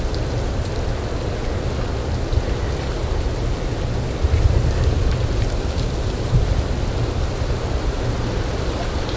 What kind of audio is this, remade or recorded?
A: recorded